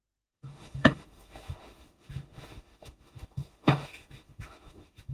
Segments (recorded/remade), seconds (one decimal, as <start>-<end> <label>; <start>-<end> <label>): 0.0-5.1 remade